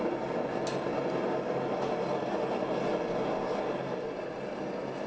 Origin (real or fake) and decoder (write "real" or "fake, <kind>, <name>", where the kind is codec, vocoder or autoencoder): real